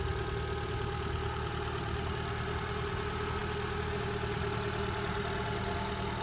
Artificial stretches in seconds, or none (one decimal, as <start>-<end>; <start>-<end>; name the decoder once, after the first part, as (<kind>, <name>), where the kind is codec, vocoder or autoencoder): none